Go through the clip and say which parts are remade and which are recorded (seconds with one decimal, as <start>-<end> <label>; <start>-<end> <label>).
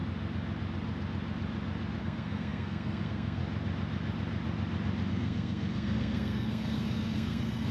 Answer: 0.0-2.0 recorded; 2.0-3.4 remade; 3.4-5.1 recorded; 5.1-7.7 remade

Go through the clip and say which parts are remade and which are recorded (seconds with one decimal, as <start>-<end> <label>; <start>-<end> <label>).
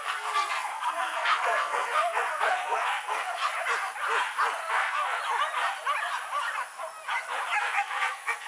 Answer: 0.0-3.4 remade; 3.4-4.7 recorded; 4.7-5.2 remade; 5.2-7.6 recorded; 7.6-8.5 remade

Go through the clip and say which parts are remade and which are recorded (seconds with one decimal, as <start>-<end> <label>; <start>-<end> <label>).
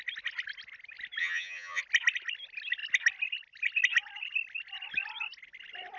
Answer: 0.0-1.2 recorded; 1.2-1.8 remade; 1.8-6.0 recorded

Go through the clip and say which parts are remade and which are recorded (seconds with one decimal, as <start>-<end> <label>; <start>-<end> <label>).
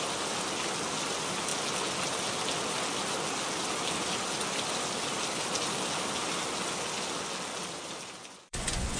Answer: 0.0-8.2 recorded; 8.2-9.0 remade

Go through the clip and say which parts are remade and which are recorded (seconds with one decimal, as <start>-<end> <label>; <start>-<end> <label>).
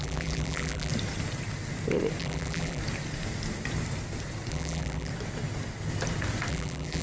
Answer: 0.0-0.9 remade; 0.9-2.2 recorded; 2.2-2.8 remade; 2.8-4.5 recorded; 4.5-5.1 remade; 5.1-6.5 recorded; 6.5-7.0 remade